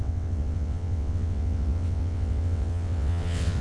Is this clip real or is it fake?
fake